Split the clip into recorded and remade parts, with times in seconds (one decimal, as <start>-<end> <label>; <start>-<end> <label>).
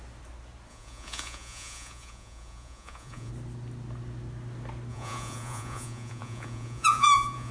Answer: 0.0-0.7 recorded; 0.7-3.3 remade; 3.3-4.9 recorded; 4.9-7.5 remade